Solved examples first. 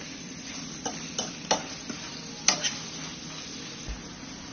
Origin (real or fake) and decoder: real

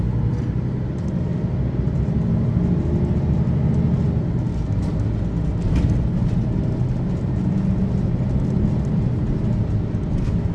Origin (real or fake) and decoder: real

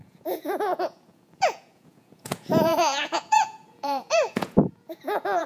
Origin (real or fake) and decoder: fake, vocoder, Vocos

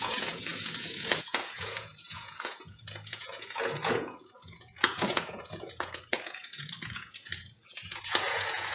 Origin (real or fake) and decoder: fake, vocoder, Vocos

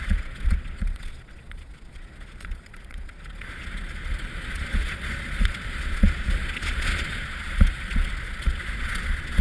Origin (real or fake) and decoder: fake, vocoder, Vocos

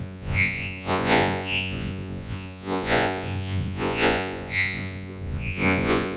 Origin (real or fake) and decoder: fake, vocoder, Vocos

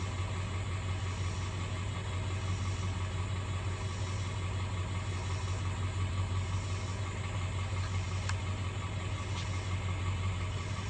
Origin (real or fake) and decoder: real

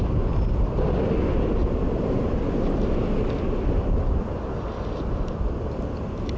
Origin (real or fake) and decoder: real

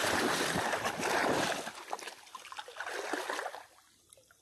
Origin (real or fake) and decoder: real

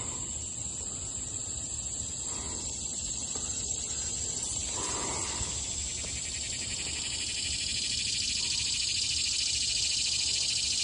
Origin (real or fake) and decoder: real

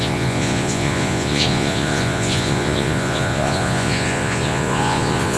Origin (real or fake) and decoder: fake, vocoder, Vocos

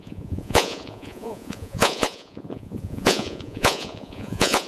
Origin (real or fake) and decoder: fake, vocoder, Vocos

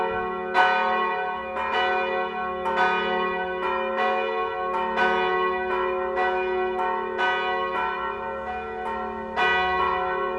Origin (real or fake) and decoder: real